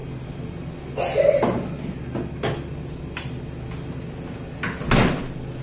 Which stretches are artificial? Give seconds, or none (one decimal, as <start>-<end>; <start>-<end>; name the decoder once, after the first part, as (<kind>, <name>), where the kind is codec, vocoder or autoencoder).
none